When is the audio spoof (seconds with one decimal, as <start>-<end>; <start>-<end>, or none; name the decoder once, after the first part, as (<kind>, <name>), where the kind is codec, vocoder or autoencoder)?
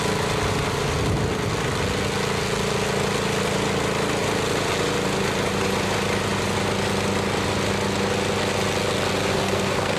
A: 9.3-10.0 (codec, SNAC)